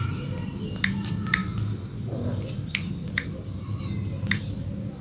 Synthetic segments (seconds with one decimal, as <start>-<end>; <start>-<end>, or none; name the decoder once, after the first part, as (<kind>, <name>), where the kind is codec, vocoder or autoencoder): none